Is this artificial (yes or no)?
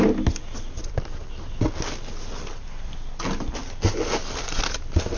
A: no